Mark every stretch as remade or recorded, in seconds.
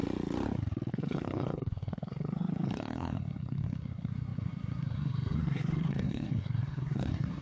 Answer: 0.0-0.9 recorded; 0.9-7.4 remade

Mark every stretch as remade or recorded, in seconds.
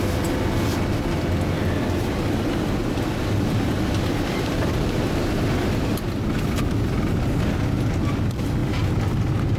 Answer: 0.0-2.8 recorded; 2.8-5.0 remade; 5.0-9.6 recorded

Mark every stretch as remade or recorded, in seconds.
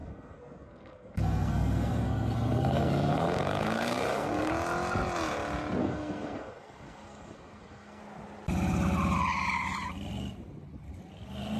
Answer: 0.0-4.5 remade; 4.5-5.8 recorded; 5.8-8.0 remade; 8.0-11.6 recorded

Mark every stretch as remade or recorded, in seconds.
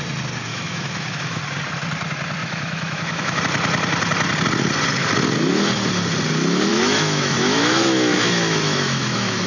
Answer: 0.0-0.5 recorded; 0.5-1.4 remade; 1.4-2.4 recorded; 2.4-3.4 remade; 3.4-6.7 recorded; 6.7-9.5 remade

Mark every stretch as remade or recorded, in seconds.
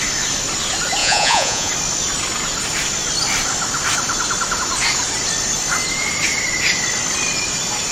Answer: 0.0-1.0 recorded; 1.0-1.7 remade; 1.7-7.9 recorded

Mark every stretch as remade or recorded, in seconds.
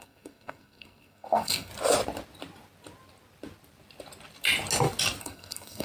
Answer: 0.0-1.7 remade; 1.7-5.2 recorded; 5.2-5.8 remade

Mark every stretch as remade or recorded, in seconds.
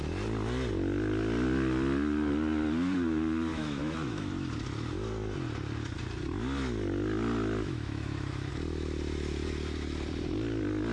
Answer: 0.0-3.5 recorded; 3.5-4.3 remade; 4.3-7.6 recorded; 7.6-8.5 remade; 8.5-10.9 recorded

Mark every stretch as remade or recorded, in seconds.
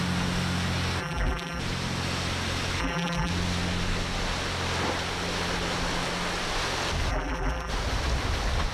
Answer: 0.0-1.0 recorded; 1.0-1.6 remade; 1.6-2.8 recorded; 2.8-3.3 remade; 3.3-7.1 recorded; 7.1-7.7 remade; 7.7-8.7 recorded